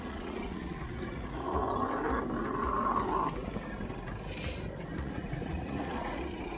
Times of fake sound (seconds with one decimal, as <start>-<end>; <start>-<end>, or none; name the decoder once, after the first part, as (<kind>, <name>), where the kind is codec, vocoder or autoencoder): 0.0-1.6 (vocoder, Vocos); 5.0-6.6